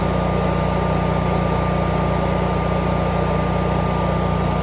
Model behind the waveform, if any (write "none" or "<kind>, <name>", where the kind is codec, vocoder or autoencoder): none